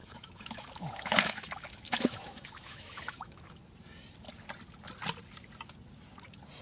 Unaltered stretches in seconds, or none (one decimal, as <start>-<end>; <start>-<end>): 3.5-6.6

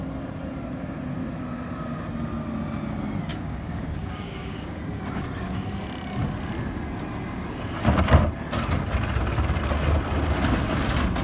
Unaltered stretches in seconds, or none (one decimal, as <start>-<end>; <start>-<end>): 0.0-3.3; 4.8-11.2